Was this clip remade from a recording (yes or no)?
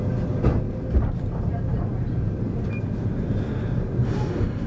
no